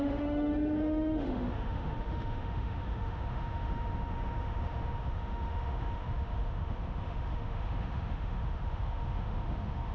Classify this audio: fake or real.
fake